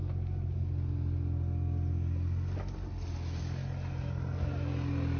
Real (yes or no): yes